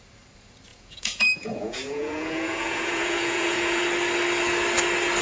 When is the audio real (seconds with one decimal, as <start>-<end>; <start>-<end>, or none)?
0.0-0.7; 3.8-5.2